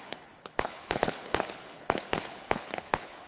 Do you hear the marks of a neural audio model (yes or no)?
yes